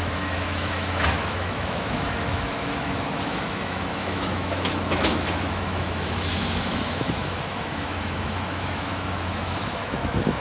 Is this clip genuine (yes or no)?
no